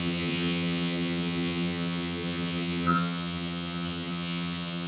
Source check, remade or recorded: remade